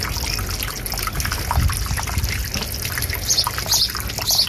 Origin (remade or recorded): recorded